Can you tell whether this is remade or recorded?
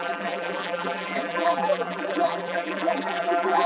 remade